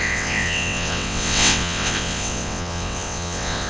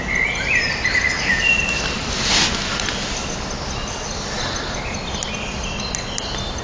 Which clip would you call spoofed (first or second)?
first